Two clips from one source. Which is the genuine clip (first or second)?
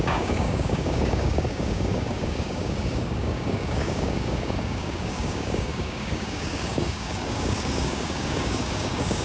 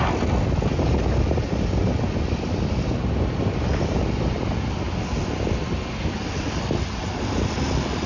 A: second